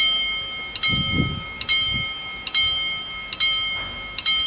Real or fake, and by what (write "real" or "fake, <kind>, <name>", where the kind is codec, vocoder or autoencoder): real